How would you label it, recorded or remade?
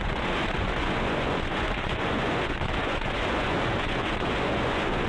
remade